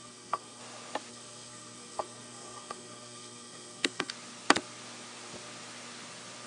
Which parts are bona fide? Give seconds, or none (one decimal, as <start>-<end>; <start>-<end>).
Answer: 0.6-1.1; 4.1-6.5